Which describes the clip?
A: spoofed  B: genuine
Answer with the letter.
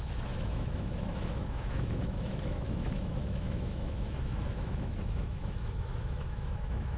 A